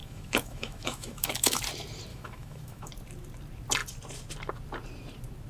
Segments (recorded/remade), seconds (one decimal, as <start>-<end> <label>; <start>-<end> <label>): 0.0-1.6 remade; 1.6-2.1 recorded; 2.1-2.9 remade; 2.9-5.5 recorded